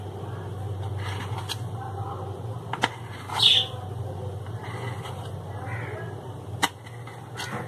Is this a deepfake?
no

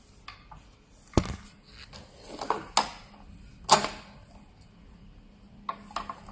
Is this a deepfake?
no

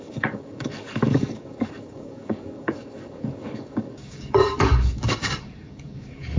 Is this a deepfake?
yes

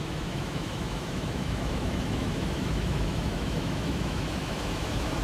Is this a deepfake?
yes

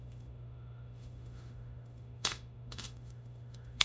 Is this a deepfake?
yes